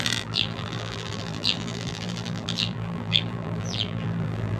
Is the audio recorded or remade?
remade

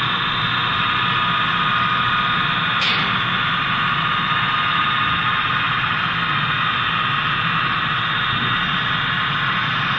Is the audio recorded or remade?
recorded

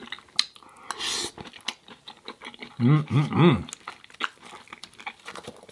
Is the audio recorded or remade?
recorded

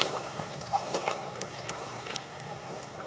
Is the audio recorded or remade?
remade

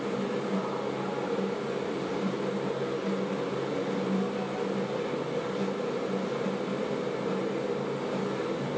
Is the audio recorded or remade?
recorded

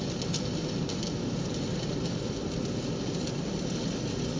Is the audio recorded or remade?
recorded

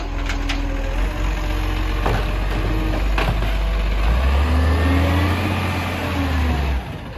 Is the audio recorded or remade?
recorded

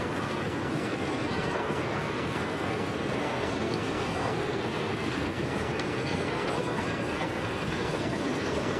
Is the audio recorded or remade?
remade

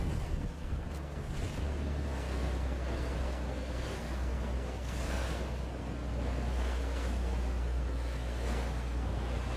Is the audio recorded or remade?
remade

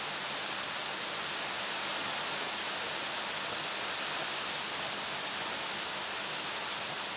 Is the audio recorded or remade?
recorded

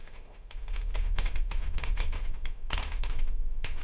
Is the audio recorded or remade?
remade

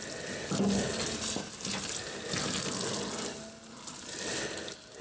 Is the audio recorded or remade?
recorded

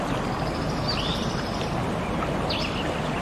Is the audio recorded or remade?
recorded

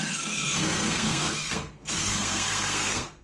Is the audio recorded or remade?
remade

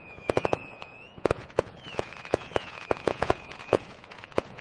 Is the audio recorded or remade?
remade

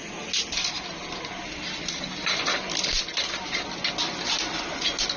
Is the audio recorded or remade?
recorded